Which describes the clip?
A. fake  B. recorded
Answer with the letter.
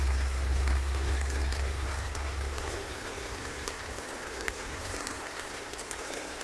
A